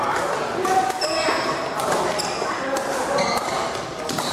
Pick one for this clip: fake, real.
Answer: real